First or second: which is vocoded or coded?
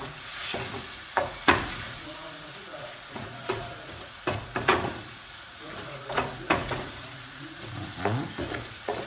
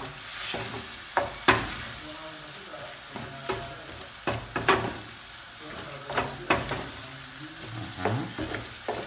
first